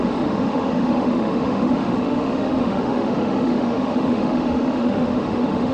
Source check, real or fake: fake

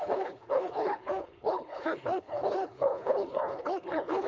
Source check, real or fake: fake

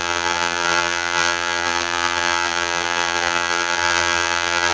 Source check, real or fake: fake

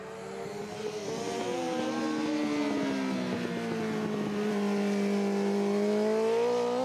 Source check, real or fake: real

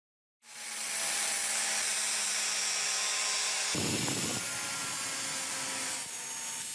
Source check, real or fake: real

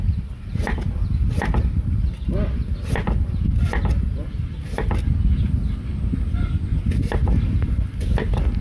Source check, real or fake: real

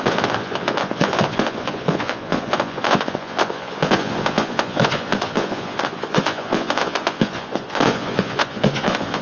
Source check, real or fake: fake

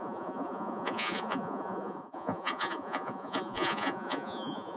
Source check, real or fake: fake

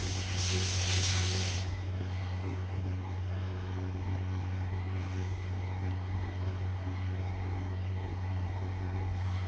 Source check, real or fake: fake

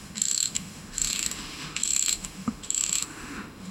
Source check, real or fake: fake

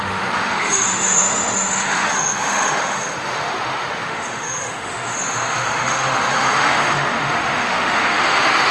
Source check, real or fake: fake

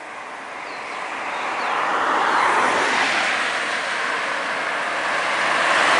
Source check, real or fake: real